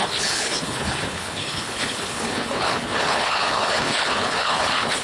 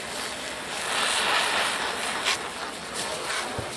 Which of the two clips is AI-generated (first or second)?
first